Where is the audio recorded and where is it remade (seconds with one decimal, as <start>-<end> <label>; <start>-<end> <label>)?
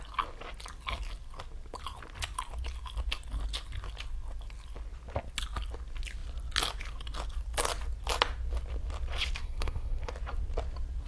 0.0-9.4 recorded; 9.4-10.1 remade; 10.1-11.1 recorded